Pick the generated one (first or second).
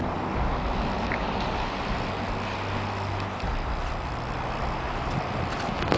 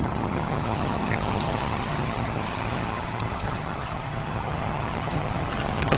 second